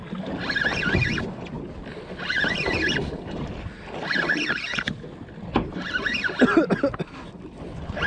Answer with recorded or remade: recorded